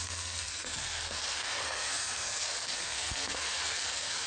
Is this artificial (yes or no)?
yes